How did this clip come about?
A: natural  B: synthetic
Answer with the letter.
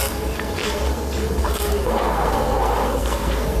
B